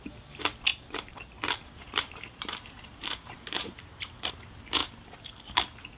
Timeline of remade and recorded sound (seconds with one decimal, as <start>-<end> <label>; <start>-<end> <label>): 0.0-0.7 recorded; 0.7-4.3 remade; 4.3-6.0 recorded